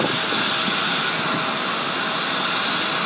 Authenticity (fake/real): real